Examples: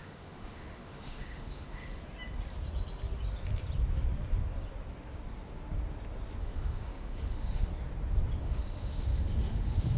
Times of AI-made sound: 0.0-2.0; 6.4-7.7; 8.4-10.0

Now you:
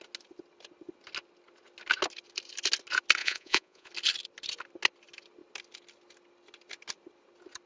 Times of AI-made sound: 3.2-3.9

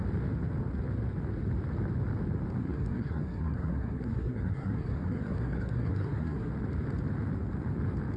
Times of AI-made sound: 2.6-6.5

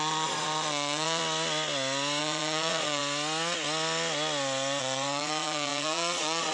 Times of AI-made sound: 0.0-1.2; 2.2-3.0; 4.8-6.5

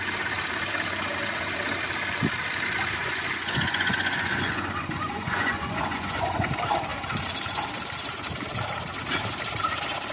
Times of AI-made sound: 3.0-6.5

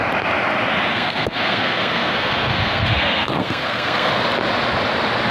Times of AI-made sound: 0.9-4.1